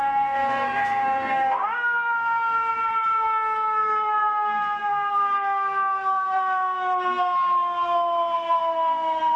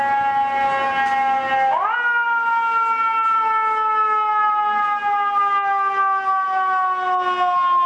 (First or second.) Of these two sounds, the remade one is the first